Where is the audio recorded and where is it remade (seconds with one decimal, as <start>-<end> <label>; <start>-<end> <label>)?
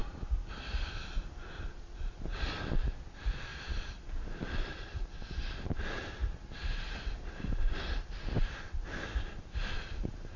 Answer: 0.0-10.4 recorded